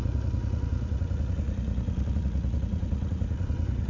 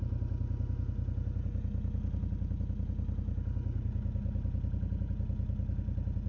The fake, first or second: first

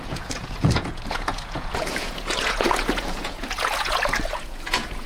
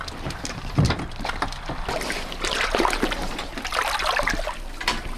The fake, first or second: first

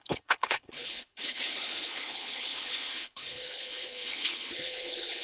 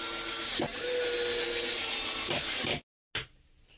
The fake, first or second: first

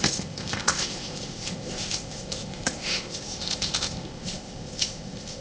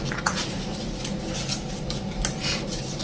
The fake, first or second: first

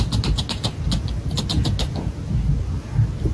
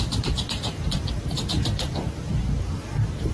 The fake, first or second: second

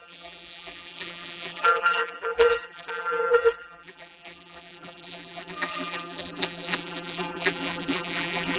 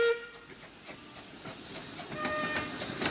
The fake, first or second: first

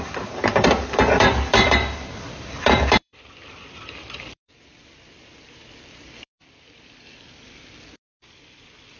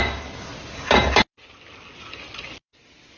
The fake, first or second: first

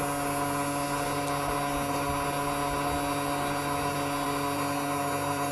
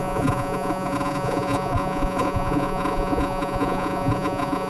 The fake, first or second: second